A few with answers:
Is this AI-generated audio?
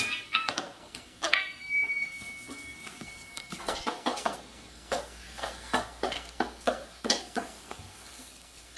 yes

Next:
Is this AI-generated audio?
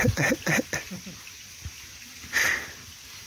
no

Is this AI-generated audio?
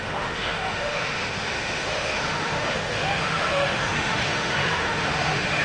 yes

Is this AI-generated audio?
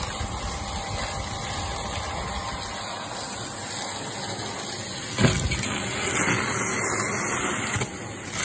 no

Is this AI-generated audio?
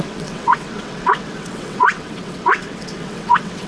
yes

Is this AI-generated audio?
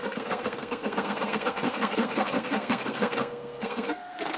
yes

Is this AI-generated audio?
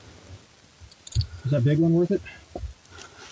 no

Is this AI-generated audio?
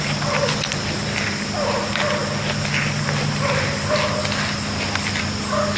no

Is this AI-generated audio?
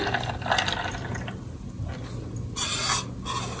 no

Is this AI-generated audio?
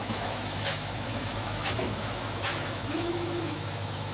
yes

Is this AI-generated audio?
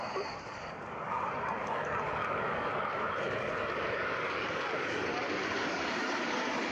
yes